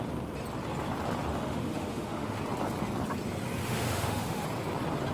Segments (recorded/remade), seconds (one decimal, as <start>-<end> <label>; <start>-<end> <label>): 0.0-1.3 recorded; 1.3-2.4 remade; 2.4-3.6 recorded; 3.6-4.4 remade; 4.4-5.1 recorded